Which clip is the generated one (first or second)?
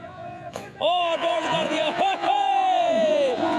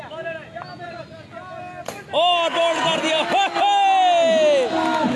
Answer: first